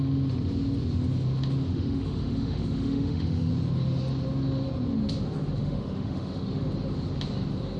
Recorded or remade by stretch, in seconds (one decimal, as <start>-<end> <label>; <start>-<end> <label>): 0.0-1.7 recorded; 1.7-3.5 remade; 3.5-5.6 recorded; 5.6-6.6 remade; 6.6-7.8 recorded